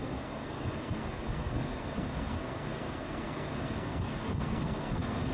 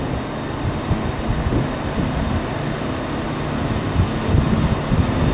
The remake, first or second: first